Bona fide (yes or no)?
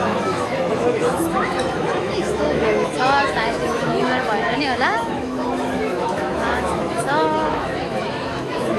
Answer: no